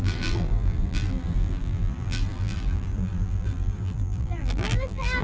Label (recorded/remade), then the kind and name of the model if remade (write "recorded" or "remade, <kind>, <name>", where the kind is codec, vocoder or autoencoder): remade, vocoder, BigVGAN v2